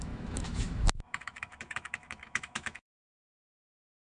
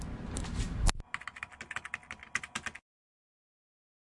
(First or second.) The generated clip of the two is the first